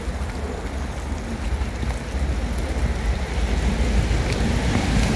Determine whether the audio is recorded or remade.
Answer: recorded